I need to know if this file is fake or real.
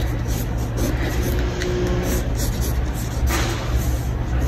real